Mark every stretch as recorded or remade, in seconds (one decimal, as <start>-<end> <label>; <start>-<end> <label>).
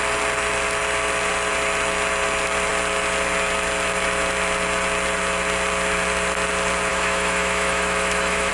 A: 0.0-6.9 recorded; 6.9-8.5 remade